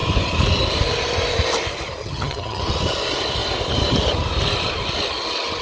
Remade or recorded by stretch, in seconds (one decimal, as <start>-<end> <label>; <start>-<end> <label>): 0.0-2.0 recorded; 2.0-2.6 remade; 2.6-5.6 recorded